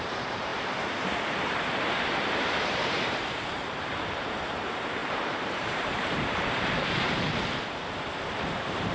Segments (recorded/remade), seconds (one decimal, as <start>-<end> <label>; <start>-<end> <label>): 0.0-8.9 remade